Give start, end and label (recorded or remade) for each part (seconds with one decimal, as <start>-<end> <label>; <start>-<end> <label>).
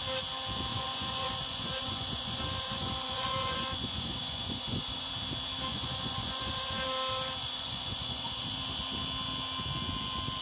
0.0-0.7 recorded; 0.7-5.1 remade; 5.1-5.7 recorded; 5.7-6.8 remade; 6.8-7.4 recorded; 7.4-8.4 remade; 8.4-10.4 recorded